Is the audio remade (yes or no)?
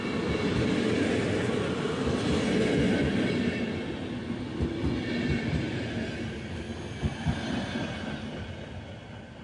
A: no